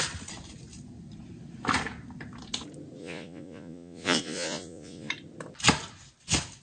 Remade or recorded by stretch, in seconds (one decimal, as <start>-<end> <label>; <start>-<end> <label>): 0.0-3.0 recorded; 3.0-5.1 remade; 5.1-6.6 recorded